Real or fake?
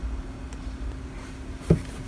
real